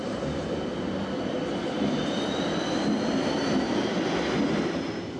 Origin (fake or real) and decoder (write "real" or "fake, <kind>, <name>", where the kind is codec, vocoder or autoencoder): real